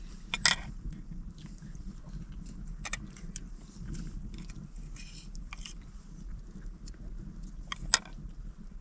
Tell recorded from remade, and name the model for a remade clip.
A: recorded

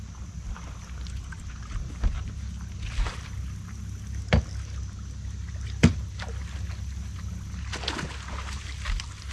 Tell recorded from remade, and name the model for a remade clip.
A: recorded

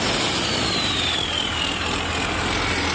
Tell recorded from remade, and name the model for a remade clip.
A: recorded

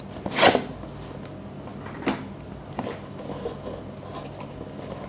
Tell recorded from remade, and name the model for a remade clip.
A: recorded